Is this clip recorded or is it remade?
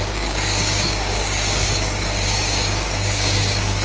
remade